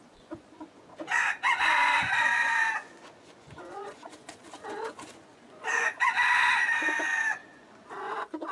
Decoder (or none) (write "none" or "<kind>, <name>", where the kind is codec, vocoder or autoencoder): vocoder, Vocos